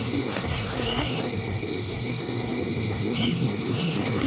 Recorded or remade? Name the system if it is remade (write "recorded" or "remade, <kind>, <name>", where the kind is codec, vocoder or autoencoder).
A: remade, codec, SNAC